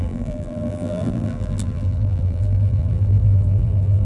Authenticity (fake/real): fake